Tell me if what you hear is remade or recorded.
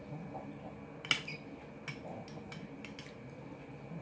recorded